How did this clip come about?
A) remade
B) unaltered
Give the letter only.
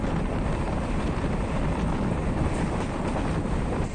A